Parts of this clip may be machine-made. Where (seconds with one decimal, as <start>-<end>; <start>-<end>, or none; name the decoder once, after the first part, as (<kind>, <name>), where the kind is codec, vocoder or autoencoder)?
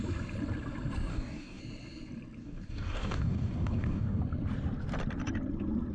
1.1-1.6 (codec, DAC); 2.4-4.2